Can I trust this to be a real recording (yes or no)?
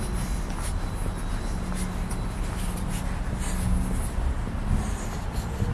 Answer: yes